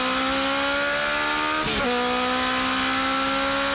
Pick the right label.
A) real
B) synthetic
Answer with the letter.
A